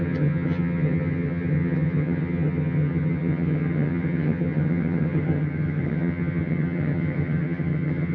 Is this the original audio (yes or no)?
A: no